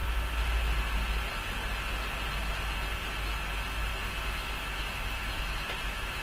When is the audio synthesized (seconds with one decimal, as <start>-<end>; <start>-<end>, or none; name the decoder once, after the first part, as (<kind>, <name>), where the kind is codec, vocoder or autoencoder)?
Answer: 3.9-6.2 (autoencoder, DAC-VAE)